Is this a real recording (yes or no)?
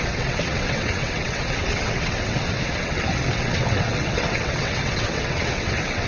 no